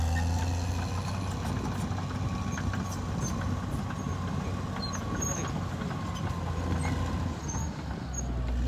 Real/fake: real